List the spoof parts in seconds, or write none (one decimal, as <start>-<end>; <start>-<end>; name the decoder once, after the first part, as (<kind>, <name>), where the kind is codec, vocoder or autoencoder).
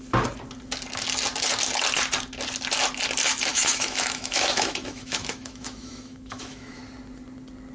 3.5-6.8 (autoencoder, DAC-VAE)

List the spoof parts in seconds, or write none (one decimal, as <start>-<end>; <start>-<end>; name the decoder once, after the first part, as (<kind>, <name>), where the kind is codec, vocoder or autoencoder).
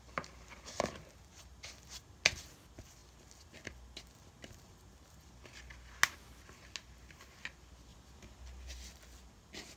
none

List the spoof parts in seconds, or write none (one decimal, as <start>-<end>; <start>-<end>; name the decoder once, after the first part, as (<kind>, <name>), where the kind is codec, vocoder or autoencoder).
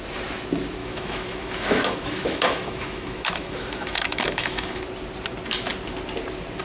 0.8-4.8 (autoencoder, DAC-VAE)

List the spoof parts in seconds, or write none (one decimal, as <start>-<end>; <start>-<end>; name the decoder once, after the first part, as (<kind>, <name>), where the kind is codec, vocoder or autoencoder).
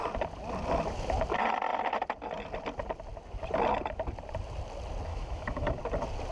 5.1-5.8 (autoencoder, DAC-VAE)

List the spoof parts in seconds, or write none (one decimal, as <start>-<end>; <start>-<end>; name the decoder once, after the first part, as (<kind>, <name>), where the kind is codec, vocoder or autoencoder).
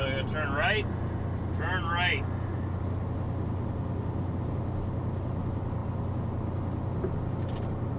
none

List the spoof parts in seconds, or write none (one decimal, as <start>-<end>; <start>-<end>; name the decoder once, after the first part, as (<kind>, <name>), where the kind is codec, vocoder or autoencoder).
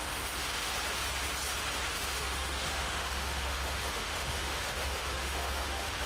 0.0-0.7 (autoencoder, DAC-VAE); 1.9-6.1